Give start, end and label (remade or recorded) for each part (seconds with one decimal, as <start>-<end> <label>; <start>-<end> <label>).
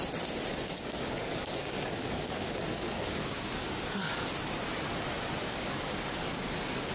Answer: 0.0-0.5 recorded; 0.5-4.1 remade; 4.1-5.4 recorded; 5.4-6.9 remade